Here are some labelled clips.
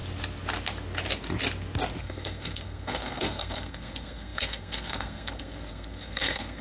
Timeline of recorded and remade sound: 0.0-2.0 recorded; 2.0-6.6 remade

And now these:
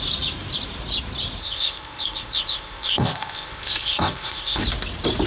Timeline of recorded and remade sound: 0.0-1.4 recorded; 1.4-4.6 remade; 4.6-5.3 recorded

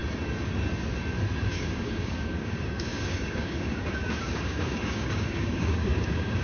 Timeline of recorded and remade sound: 0.0-1.5 recorded; 1.5-6.4 remade

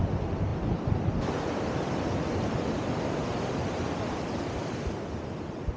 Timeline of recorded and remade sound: 0.0-5.8 recorded

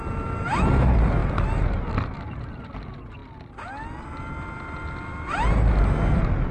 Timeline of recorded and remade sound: 0.0-6.5 recorded